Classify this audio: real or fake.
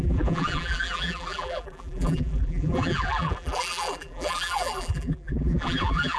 fake